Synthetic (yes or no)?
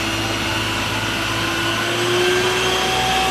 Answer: no